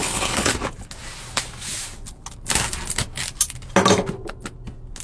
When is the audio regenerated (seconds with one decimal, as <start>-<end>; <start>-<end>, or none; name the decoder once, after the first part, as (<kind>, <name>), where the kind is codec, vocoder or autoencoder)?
0.0-0.5 (codec, HILCodec)